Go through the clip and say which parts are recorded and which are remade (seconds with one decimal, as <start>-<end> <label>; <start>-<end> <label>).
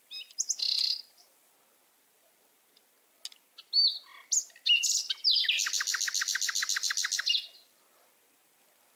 0.0-9.0 recorded